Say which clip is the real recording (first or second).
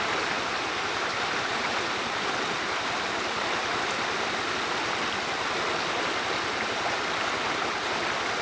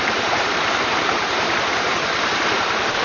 first